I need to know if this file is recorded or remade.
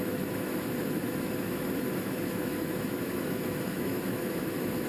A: remade